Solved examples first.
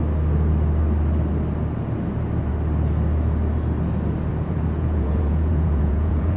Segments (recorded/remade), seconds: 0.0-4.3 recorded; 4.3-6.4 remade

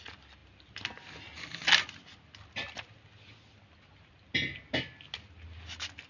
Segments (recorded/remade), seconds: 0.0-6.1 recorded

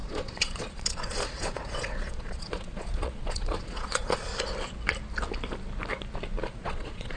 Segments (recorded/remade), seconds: 0.0-4.3 remade; 4.3-6.5 recorded; 6.5-7.2 remade

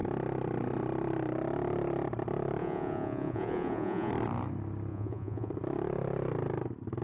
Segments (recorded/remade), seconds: 0.0-2.6 recorded; 2.6-4.1 remade; 4.1-4.9 recorded; 4.9-5.5 remade; 5.5-7.0 recorded